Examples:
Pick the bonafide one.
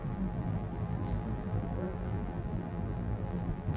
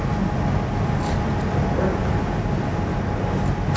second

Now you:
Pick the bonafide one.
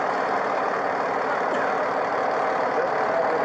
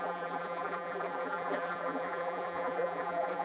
first